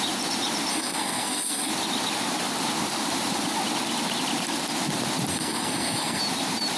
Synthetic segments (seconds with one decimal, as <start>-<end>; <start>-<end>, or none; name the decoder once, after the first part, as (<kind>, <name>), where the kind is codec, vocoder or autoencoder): 0.7-1.7 (codec, SNAC); 5.3-6.2